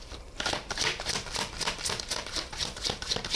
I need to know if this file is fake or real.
fake